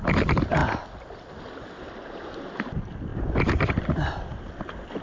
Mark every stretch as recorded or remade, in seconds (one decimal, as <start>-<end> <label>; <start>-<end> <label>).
0.0-5.0 recorded